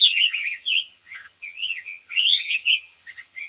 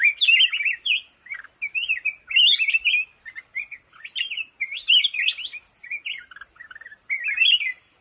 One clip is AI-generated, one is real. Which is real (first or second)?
second